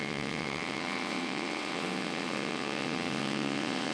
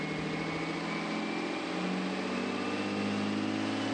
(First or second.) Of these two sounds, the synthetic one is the first